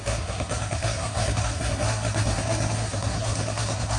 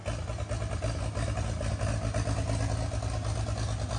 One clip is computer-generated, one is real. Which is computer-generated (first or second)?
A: first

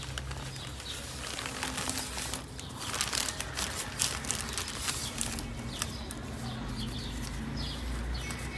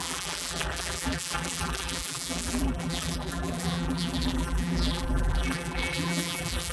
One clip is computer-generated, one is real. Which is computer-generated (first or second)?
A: second